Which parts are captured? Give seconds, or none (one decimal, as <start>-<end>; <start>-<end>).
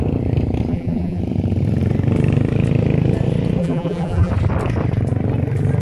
0.0-0.7; 1.2-3.6; 4.3-5.8